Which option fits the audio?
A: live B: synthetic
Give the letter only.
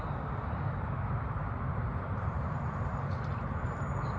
B